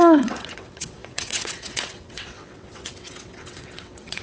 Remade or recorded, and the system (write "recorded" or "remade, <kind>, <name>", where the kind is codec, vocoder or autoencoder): remade, vocoder, WaveNeXt